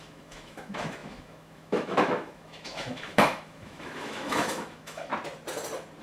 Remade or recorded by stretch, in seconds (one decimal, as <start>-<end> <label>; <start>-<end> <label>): 0.0-5.1 remade; 5.1-6.0 recorded